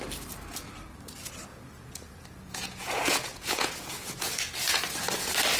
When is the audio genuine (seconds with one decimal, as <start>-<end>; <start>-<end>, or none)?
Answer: 0.0-1.5; 4.8-5.6